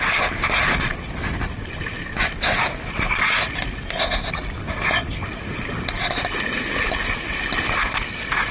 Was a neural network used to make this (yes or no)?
no